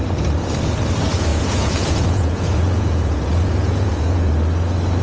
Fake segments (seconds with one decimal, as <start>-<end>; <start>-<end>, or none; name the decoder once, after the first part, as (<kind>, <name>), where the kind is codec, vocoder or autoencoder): 1.3-4.3 (vocoder, Vocos)